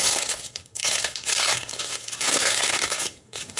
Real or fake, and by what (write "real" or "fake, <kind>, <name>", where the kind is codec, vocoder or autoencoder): fake, codec, SNAC